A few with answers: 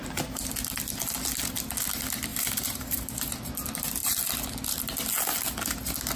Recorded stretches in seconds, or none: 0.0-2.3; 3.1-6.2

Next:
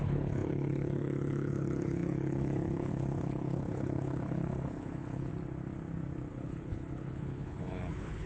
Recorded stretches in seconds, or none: 5.3-6.3

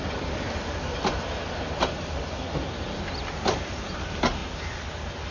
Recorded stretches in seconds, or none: 0.0-5.3

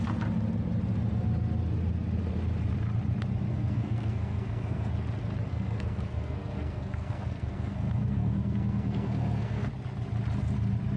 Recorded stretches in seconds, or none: 0.0-3.5; 4.9-5.5; 9.7-11.0

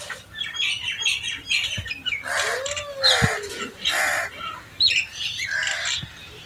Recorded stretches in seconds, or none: none